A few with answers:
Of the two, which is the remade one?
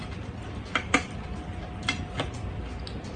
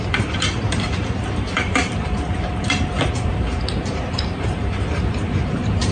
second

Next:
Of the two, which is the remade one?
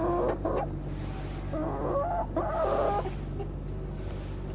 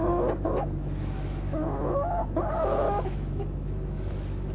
second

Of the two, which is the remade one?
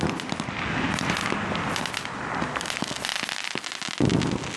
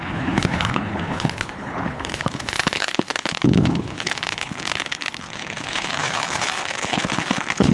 second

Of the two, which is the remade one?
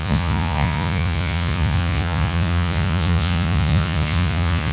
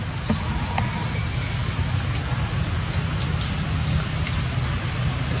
first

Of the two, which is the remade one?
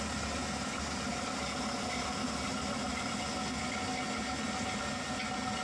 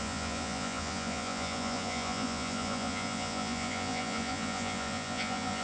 second